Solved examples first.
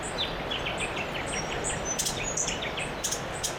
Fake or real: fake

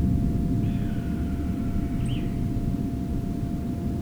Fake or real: real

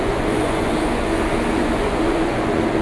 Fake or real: fake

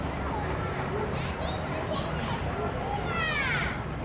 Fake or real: real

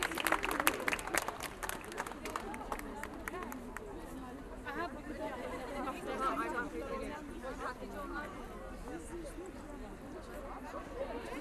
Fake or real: real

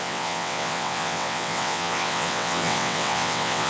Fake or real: fake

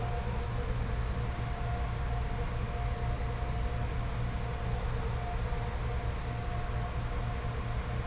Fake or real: real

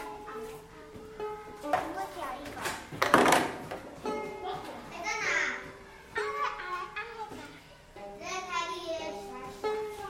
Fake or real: fake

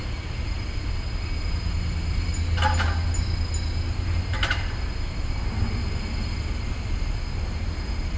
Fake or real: real